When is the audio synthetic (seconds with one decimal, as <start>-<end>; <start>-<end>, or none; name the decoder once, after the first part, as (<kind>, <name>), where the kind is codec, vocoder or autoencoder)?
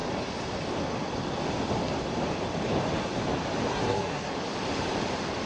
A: 3.7-4.3 (codec, SNAC)